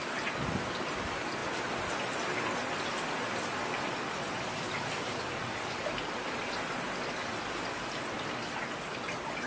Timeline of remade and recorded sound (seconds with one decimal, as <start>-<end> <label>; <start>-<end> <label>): 0.0-9.5 recorded